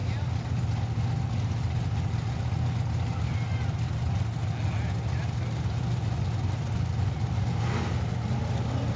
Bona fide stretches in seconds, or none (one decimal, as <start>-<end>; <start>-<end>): 0.0-9.0